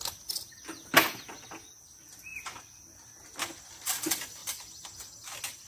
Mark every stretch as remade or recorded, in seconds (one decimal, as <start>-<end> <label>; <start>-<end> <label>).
0.0-2.3 recorded; 2.3-2.8 remade; 2.8-5.7 recorded